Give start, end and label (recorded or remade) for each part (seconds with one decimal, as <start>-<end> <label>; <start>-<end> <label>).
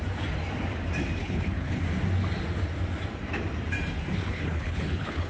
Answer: 0.0-1.2 recorded; 1.2-1.8 remade; 1.8-4.2 recorded; 4.2-5.3 remade